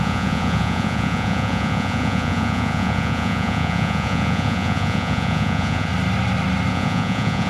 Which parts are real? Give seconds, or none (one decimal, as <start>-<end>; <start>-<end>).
5.9-6.7